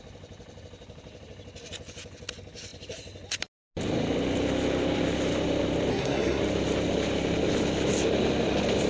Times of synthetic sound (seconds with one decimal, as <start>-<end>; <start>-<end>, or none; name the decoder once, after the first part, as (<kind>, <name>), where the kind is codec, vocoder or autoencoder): 5.9-6.4 (codec, SNAC)